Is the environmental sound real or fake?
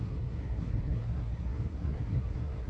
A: fake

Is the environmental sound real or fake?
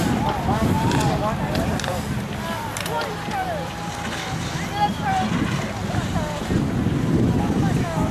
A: real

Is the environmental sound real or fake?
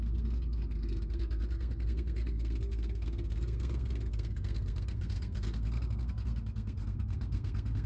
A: fake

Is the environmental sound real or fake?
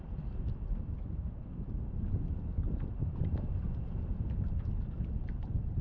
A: real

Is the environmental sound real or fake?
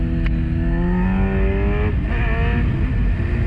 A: real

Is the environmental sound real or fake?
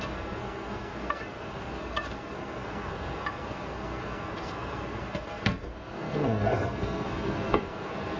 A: fake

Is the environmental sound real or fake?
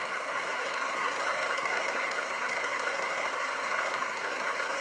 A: fake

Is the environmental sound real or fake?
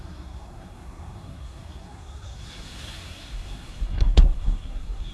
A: fake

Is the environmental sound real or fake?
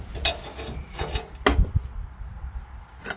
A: real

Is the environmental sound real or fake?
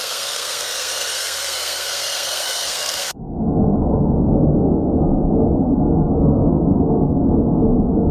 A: fake